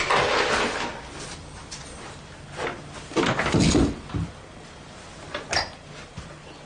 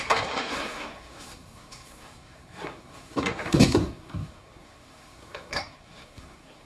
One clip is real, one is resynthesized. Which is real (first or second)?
first